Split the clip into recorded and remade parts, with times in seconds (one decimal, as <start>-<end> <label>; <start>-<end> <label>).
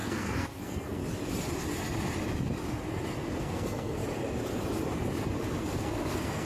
0.0-1.0 remade; 1.0-3.4 recorded; 3.4-4.0 remade; 4.0-5.6 recorded; 5.6-6.5 remade